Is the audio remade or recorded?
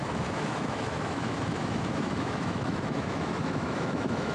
remade